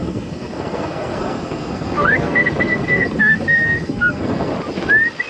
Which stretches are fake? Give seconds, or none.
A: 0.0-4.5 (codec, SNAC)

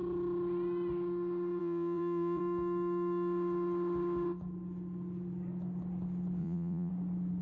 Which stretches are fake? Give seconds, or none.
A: 1.6-2.4 (vocoder, Vocos); 6.4-6.9

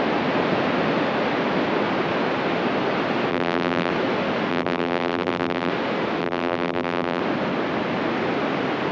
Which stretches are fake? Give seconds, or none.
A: 3.3-3.9 (vocoder, BigVGAN v2); 4.5-5.7; 6.2-7.2

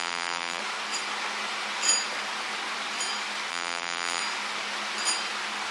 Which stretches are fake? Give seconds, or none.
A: 0.0-0.6 (vocoder, BigVGAN v2); 3.5-4.2

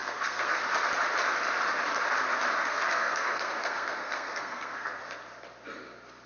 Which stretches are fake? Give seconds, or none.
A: 0.0-0.6 (codec, SNAC); 2.7-5.0